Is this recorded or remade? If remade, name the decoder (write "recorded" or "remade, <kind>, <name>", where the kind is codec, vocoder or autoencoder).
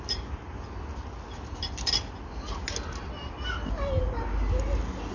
recorded